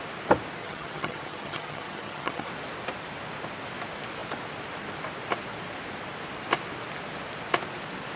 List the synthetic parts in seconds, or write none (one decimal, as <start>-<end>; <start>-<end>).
0.6-2.5